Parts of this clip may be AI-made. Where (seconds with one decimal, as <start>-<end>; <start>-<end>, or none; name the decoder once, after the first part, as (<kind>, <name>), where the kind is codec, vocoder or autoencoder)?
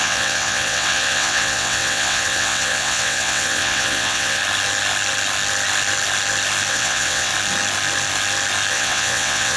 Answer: 0.0-4.4 (vocoder, WaveNeXt); 6.7-7.3; 8.7-9.6